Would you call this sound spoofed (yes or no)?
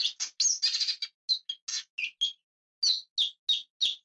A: no